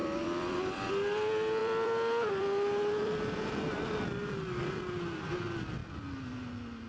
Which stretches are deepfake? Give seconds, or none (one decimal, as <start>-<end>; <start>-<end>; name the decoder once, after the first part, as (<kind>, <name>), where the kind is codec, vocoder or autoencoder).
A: 0.0-0.9 (vocoder, BigVGAN v2); 1.6-5.3; 5.8-6.3